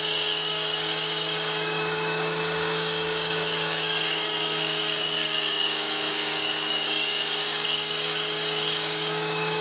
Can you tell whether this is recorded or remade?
remade